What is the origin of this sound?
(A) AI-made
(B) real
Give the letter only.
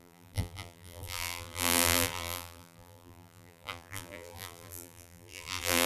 A